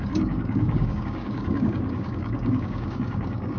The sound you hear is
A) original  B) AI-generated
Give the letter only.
B